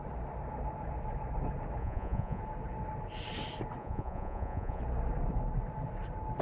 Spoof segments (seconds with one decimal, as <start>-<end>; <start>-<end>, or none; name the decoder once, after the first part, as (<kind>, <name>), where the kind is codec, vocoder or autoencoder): 1.8-2.4 (vocoder, Vocos); 3.8-4.8